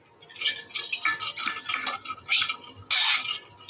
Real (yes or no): yes